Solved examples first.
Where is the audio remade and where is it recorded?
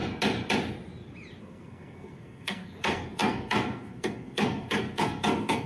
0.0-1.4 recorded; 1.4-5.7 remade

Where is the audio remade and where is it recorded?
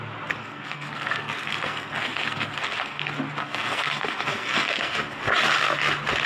0.0-0.4 recorded; 0.4-3.0 remade; 3.0-3.4 recorded; 3.4-5.2 remade; 5.2-6.3 recorded